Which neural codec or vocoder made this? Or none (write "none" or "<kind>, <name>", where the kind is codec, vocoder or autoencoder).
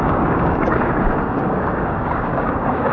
codec, DAC